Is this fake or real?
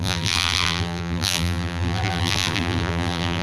fake